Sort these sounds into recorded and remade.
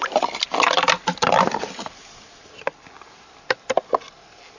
recorded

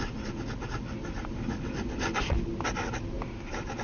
recorded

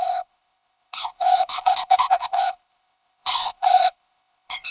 remade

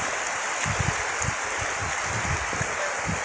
recorded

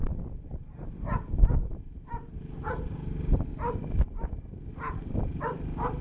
recorded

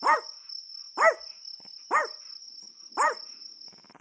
recorded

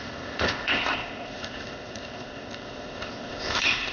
remade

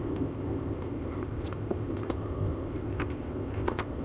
remade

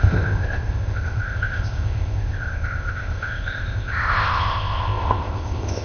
remade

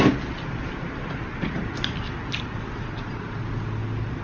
recorded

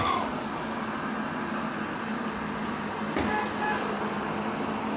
recorded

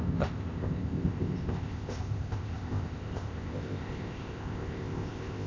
remade